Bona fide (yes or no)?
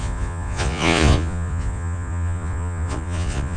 no